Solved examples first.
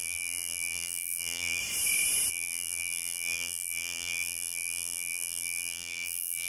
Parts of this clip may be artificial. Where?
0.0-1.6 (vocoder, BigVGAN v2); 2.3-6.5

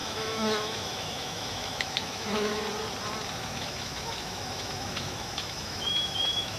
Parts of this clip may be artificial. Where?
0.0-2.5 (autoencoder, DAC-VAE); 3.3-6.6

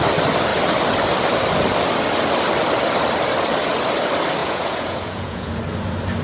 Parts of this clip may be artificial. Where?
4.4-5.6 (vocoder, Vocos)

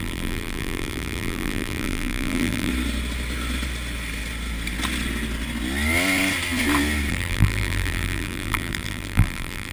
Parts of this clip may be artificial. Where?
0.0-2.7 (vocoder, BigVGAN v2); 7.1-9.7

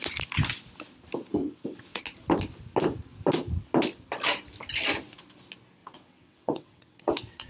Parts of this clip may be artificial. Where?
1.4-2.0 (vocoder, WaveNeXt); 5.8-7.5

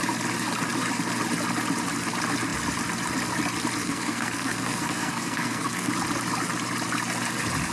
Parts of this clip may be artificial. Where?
3.8-5.9 (codec, SNAC)

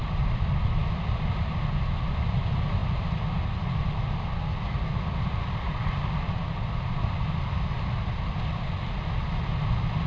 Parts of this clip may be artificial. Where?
none

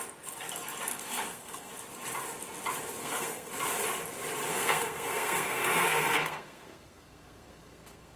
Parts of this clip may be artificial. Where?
0.9-1.7 (codec, SNAC); 3.0-3.5; 4.5-8.2